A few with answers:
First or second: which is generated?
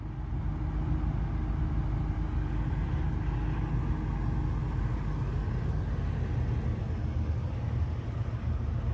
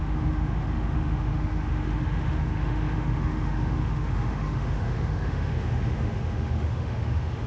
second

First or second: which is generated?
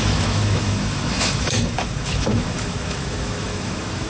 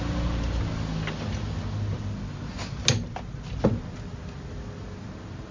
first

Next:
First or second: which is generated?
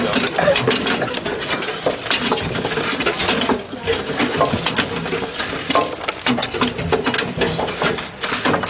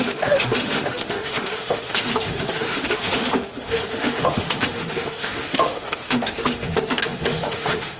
second